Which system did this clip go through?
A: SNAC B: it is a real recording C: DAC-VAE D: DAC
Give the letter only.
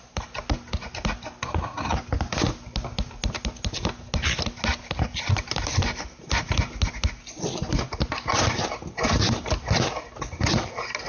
B